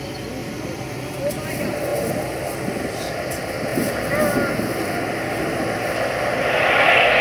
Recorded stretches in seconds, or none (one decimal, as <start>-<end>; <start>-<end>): 0.0-0.4; 1.3-7.2